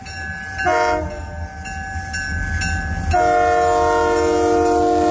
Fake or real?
real